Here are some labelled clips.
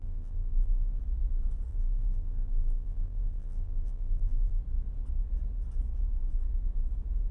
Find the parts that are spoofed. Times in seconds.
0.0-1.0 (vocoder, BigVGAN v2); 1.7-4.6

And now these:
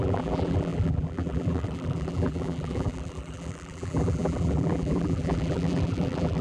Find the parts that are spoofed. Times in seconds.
0.0-6.4 (vocoder, BigVGAN v2)